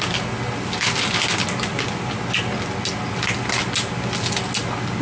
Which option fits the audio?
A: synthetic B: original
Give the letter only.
B